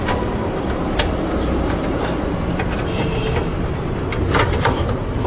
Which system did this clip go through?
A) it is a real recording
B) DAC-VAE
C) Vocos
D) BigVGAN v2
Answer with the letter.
D